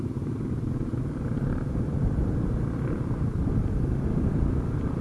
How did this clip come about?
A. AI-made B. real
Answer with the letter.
B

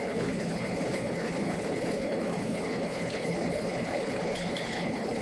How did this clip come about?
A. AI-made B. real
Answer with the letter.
A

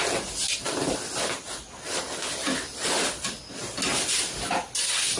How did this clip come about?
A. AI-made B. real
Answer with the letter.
B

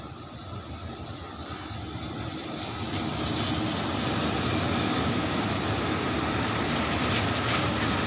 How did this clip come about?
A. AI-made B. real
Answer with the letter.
B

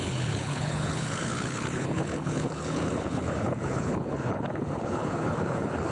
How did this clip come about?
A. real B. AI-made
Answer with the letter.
B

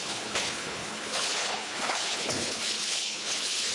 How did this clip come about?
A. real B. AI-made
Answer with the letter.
B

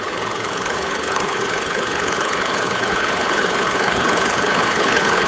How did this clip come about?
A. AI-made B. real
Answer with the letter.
A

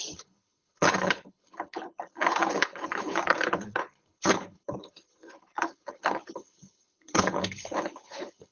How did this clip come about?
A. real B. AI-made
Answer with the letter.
B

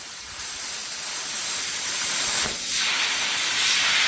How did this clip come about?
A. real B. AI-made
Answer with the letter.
A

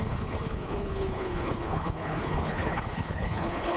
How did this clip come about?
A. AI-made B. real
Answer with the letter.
A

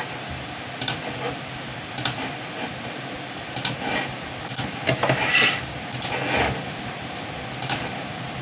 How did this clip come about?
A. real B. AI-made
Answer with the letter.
A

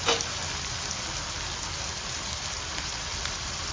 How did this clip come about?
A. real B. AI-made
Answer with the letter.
A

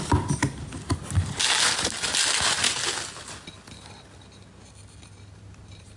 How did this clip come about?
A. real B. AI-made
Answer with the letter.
A